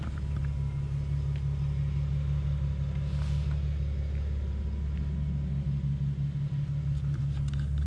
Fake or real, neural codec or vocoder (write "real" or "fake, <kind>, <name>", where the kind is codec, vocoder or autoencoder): real